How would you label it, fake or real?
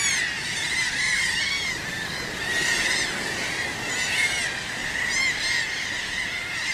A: real